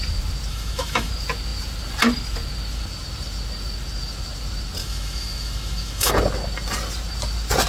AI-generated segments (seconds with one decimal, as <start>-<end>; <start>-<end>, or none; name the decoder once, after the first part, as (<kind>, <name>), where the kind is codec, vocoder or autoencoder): 0.5-1.1 (autoencoder, DAC-VAE); 4.8-6.1